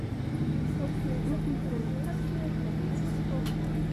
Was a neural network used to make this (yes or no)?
no